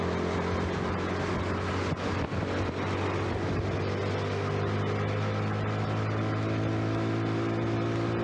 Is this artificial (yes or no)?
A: no